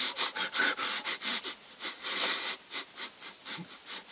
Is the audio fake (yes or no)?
no